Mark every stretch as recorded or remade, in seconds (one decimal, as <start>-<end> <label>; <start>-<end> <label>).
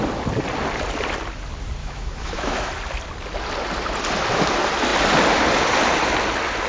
0.0-1.8 recorded; 1.8-2.7 remade; 2.7-6.7 recorded